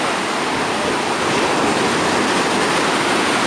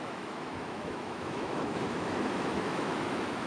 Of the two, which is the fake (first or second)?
second